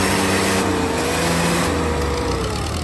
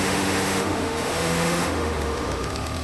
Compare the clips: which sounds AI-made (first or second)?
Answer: second